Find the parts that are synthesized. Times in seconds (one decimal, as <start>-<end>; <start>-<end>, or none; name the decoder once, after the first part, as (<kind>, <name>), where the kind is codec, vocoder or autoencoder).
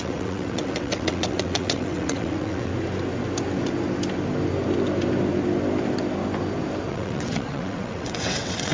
0.0-2.7 (vocoder, WaveNeXt); 6.9-8.7